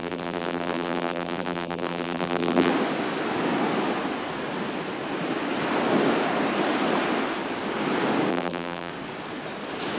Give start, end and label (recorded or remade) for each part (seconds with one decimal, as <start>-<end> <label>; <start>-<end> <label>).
0.0-2.7 remade; 2.7-8.3 recorded; 8.3-8.9 remade; 8.9-10.0 recorded